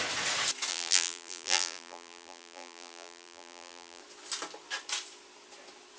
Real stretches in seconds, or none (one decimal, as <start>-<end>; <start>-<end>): 0.0-0.7; 4.0-6.0